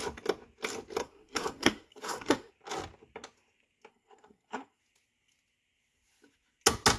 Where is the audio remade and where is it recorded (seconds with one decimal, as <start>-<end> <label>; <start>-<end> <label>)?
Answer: 0.0-1.0 recorded; 1.0-2.5 remade; 2.5-3.9 recorded; 3.9-4.8 remade; 4.8-7.0 recorded